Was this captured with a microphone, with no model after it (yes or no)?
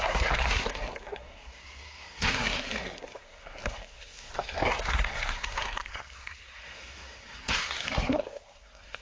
no